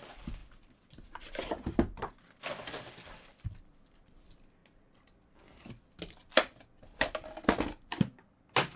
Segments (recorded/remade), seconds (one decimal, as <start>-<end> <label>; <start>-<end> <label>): 0.0-4.6 remade; 4.6-6.8 recorded; 6.8-8.8 remade